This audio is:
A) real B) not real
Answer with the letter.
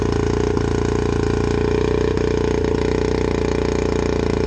A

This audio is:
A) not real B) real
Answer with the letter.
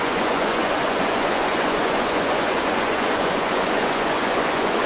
A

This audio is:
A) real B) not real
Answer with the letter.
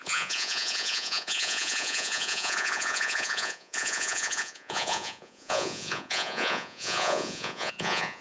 B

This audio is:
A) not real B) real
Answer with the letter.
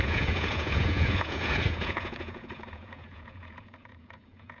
A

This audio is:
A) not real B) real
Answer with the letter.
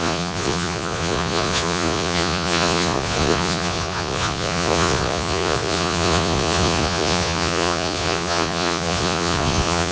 A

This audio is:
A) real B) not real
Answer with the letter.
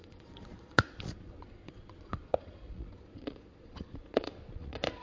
B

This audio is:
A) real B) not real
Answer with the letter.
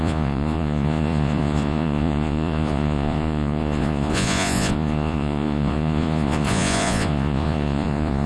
B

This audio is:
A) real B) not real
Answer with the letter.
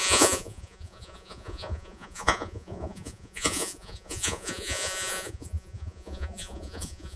B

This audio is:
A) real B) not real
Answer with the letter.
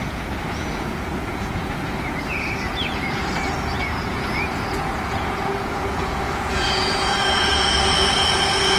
B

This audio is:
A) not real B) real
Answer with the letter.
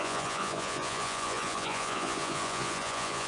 A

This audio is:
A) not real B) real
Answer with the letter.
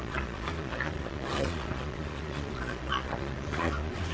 A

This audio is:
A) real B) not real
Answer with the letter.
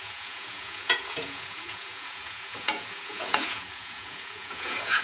B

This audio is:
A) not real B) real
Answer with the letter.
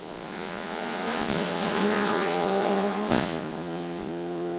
A